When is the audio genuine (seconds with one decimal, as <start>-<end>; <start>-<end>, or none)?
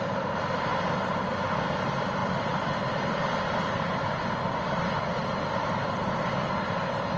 0.0-7.2